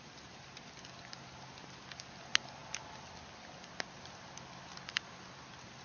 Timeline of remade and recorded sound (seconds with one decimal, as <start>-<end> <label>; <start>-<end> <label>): 0.0-5.8 recorded